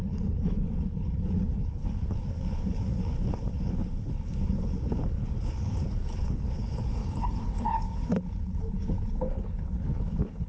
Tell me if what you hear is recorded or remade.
remade